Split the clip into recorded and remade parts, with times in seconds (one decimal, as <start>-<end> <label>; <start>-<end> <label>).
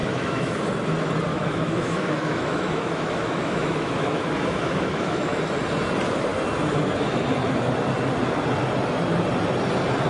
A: 0.0-0.7 remade; 0.7-1.3 recorded; 1.3-5.4 remade; 5.4-10.1 recorded